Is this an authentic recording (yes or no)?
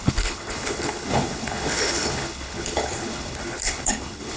no